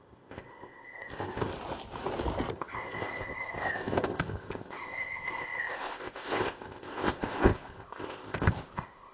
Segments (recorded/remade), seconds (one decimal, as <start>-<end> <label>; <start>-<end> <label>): 0.0-1.5 remade; 1.5-2.5 recorded; 2.5-9.1 remade